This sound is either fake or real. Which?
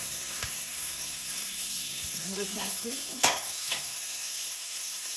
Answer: fake